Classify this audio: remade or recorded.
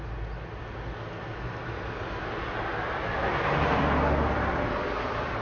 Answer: recorded